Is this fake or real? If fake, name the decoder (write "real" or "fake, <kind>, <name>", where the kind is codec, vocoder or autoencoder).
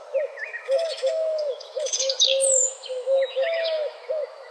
fake, autoencoder, DAC-VAE